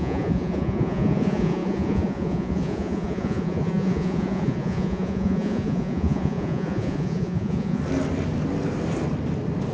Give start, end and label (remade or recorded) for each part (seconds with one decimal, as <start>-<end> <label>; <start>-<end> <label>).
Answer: 0.0-7.8 remade; 7.8-9.7 recorded